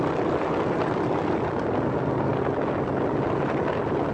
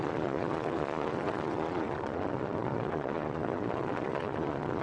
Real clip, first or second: first